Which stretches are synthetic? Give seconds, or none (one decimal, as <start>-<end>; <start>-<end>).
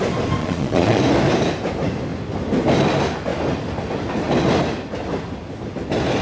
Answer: 0.4-1.0